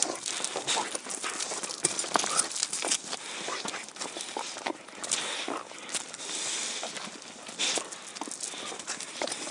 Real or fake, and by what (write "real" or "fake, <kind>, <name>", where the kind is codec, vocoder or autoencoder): real